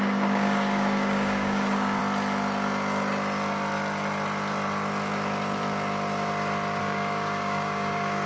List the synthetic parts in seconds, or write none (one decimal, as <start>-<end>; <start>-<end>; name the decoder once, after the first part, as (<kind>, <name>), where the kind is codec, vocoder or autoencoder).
0.0-2.0 (codec, DAC); 6.8-8.3